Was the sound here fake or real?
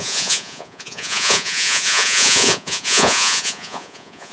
fake